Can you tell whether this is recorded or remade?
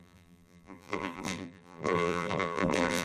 remade